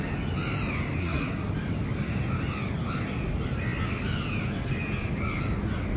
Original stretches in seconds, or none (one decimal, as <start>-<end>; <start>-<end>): 0.0-1.0; 1.5-6.0